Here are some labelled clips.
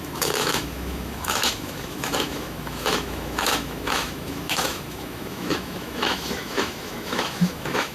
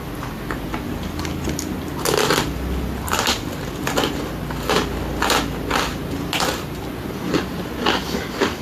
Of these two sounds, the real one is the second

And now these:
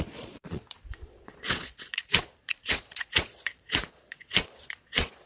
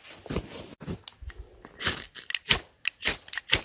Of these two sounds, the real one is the second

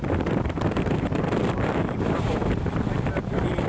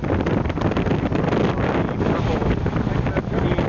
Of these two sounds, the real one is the second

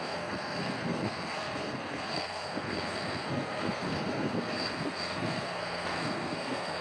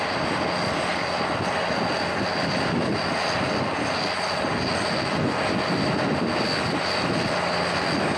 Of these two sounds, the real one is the second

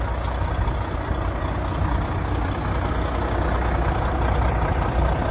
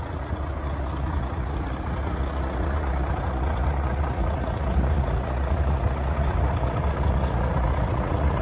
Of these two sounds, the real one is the first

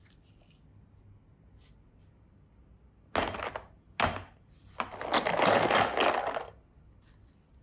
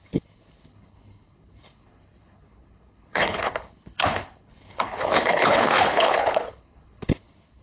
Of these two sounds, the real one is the first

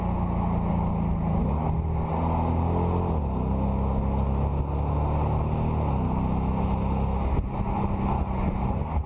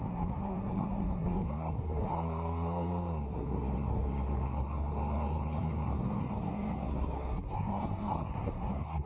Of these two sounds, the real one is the first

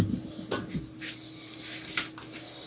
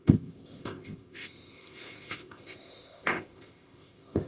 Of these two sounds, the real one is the first